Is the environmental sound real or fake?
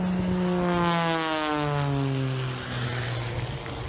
real